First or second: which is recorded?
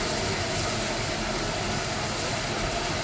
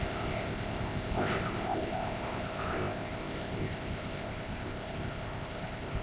first